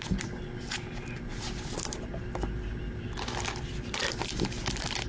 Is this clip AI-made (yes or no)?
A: no